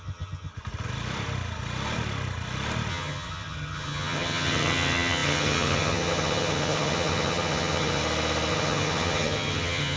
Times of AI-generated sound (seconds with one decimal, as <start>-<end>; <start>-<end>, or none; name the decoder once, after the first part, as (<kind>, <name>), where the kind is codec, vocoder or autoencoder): 0.0-0.5 (vocoder, HiFi-GAN); 2.9-8.0; 8.5-10.0